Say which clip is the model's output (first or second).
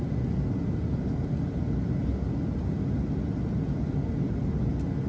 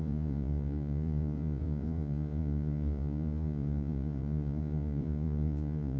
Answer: second